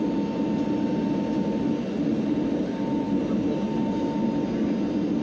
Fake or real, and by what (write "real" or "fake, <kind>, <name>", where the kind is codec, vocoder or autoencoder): real